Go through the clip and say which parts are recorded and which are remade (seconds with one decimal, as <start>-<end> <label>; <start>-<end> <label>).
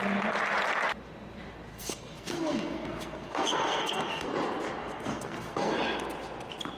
0.0-1.7 recorded; 1.7-4.3 remade; 4.3-4.8 recorded; 4.8-5.8 remade; 5.8-6.8 recorded